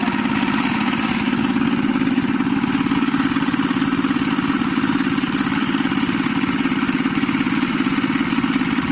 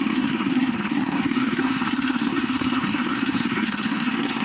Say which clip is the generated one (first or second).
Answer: second